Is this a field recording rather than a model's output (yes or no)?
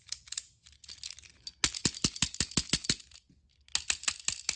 yes